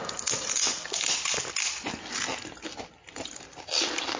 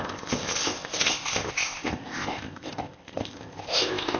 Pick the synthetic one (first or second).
second